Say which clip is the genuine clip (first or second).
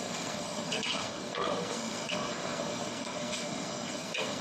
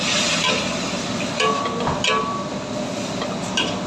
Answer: second